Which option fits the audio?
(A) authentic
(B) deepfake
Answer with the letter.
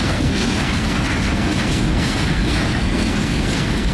B